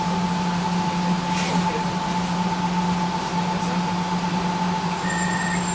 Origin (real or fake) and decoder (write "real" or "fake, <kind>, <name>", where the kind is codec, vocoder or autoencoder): real